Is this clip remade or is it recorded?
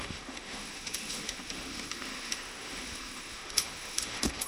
remade